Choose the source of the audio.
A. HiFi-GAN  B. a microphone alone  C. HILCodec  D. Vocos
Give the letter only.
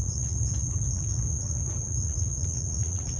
D